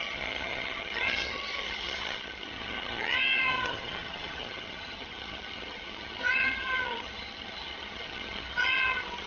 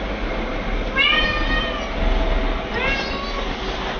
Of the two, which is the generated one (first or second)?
first